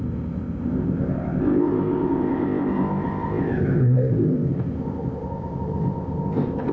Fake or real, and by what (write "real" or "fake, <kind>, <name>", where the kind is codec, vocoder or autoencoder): fake, codec, ZipCodec